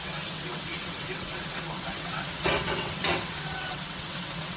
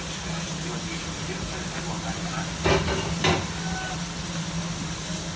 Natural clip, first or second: second